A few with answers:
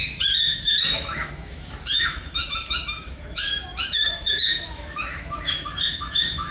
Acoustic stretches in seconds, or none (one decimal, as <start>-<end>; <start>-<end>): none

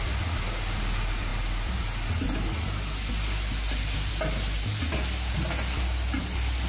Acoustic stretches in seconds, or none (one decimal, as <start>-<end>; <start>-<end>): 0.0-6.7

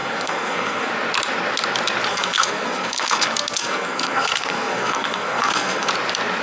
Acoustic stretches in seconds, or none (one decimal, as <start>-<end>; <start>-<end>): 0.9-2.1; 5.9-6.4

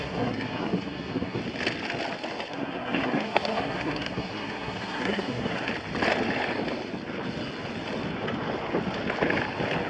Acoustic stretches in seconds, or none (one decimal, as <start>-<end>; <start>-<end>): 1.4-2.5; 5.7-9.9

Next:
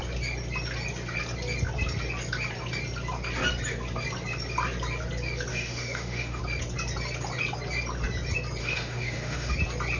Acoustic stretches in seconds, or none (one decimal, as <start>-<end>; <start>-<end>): 0.0-5.5; 6.4-8.6; 9.5-10.0

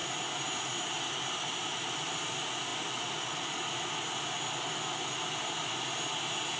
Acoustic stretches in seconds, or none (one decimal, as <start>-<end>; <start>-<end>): 0.0-6.6